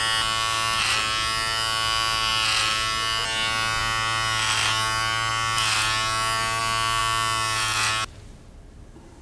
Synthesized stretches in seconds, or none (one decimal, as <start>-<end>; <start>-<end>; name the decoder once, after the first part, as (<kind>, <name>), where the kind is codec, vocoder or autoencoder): none